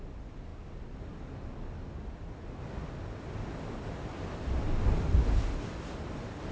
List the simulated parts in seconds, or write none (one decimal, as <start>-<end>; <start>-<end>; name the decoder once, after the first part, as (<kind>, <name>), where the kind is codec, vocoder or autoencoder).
none